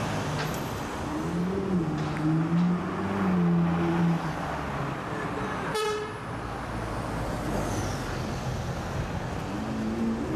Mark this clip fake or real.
real